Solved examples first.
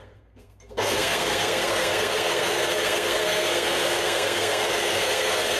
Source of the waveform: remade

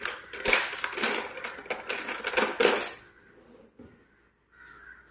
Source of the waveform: recorded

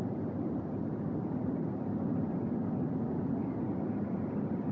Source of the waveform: recorded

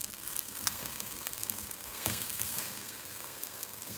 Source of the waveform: remade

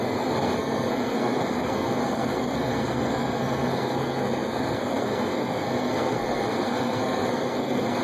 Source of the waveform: remade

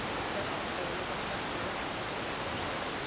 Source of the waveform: recorded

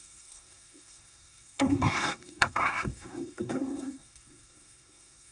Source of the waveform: remade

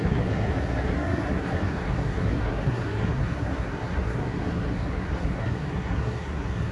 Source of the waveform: remade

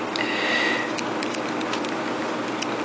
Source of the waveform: recorded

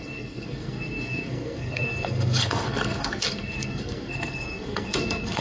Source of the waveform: remade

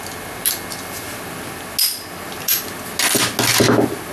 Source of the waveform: recorded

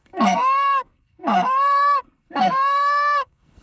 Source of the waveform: remade